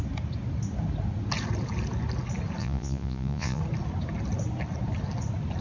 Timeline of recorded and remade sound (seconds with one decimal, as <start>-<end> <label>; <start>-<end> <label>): 0.0-2.6 recorded; 2.6-3.6 remade; 3.6-5.6 recorded